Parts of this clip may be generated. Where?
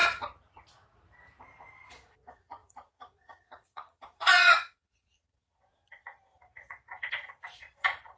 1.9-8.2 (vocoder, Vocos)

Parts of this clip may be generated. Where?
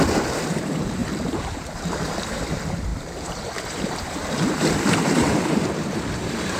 0.0-6.6 (vocoder, BigVGAN v2)